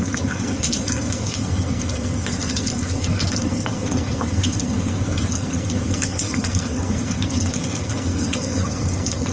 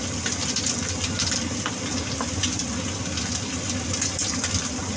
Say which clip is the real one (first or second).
second